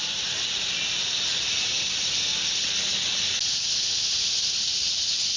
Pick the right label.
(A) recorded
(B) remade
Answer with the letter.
A